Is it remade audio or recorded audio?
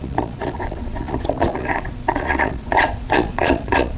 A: remade